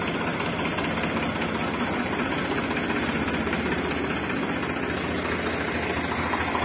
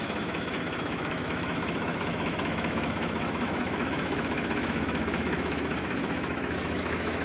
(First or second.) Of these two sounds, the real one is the first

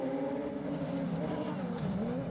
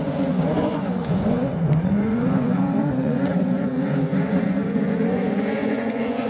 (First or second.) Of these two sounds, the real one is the first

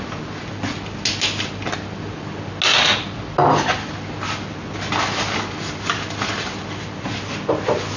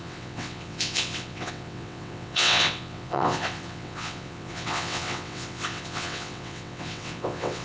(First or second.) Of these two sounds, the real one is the first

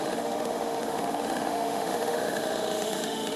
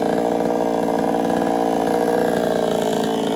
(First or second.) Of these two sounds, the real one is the second